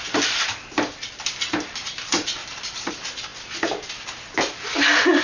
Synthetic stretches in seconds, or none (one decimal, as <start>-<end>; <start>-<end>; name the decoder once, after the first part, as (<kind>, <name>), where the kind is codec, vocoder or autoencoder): none